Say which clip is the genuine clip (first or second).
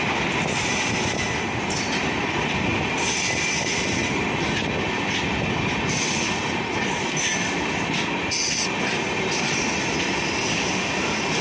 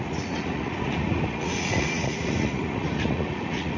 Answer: first